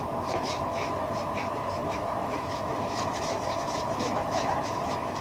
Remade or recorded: remade